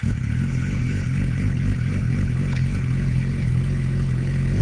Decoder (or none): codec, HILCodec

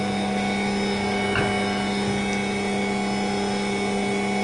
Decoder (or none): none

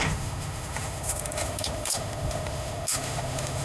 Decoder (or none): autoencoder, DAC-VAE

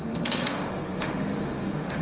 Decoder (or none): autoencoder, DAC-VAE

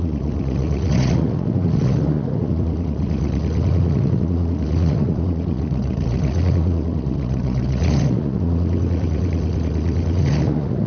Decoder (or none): vocoder, Vocos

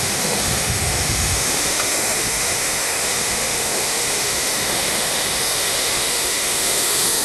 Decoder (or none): autoencoder, DAC-VAE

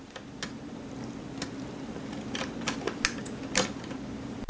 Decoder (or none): none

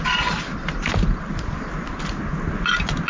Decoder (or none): none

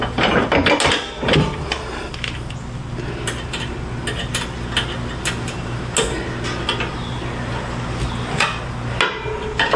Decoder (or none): none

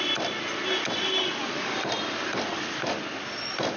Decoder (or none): none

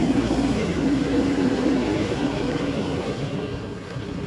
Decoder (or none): codec, SNAC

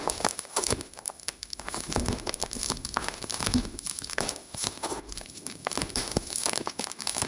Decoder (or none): autoencoder, DAC-VAE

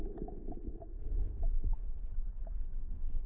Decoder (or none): none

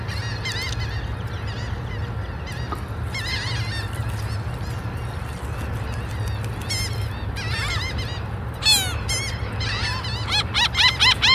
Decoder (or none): none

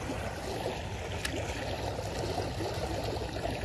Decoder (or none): none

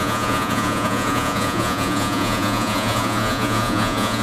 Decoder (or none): vocoder, Vocos